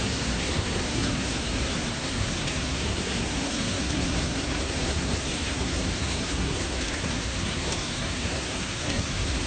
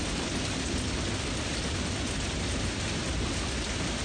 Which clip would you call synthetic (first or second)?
first